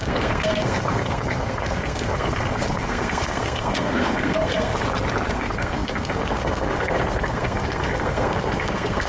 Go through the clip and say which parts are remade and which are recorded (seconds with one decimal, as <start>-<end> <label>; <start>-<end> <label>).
0.0-4.7 remade; 4.7-5.3 recorded; 5.3-9.1 remade